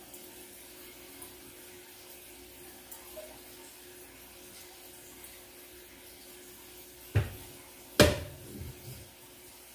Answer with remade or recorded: recorded